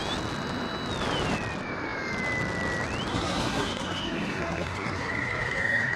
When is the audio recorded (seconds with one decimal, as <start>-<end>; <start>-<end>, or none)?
0.0-3.1